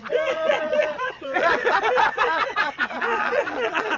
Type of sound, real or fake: fake